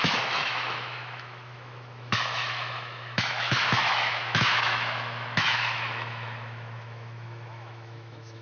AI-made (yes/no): yes